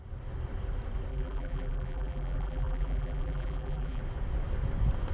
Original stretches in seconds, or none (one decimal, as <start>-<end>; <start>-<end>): 0.0-1.1; 4.0-5.1